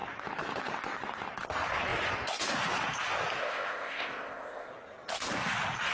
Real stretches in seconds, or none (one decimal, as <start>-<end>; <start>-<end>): 0.0-3.4; 4.7-5.9